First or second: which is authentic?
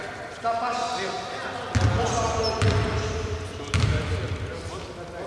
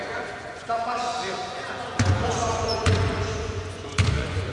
first